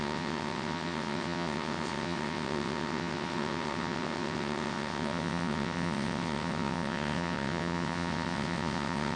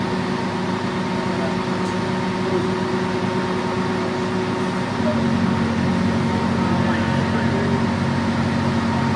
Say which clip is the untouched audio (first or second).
second